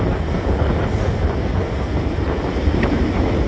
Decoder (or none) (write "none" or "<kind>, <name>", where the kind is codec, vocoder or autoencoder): none